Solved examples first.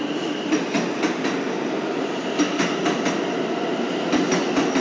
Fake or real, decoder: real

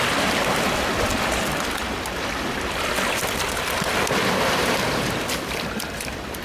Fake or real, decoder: real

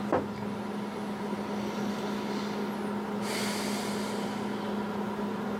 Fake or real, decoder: real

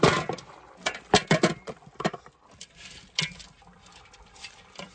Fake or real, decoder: fake, vocoder, BigVGAN v2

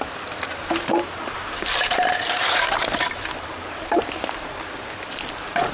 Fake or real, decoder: fake, vocoder, BigVGAN v2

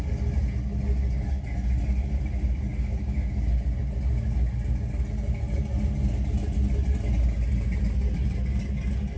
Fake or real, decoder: real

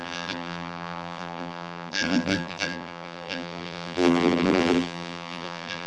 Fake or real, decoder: fake, vocoder, BigVGAN v2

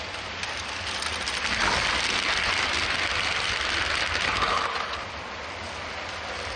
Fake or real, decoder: real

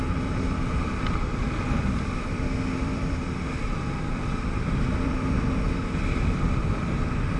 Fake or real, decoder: fake, vocoder, BigVGAN v2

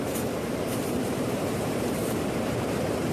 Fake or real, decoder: fake, vocoder, BigVGAN v2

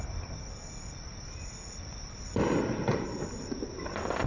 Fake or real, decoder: real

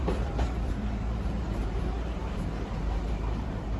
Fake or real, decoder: fake, vocoder, BigVGAN v2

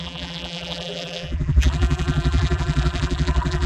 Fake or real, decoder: fake, vocoder, BigVGAN v2